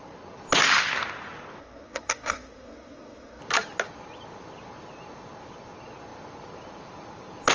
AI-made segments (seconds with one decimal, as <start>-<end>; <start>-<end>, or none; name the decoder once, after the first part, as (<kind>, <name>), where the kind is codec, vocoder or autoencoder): 1.6-3.4 (codec, SNAC)